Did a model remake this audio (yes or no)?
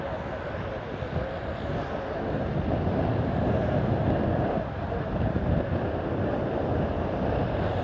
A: no